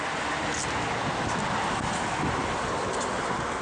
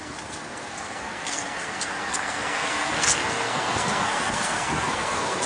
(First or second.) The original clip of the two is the first